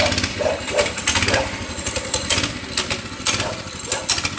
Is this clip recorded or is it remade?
recorded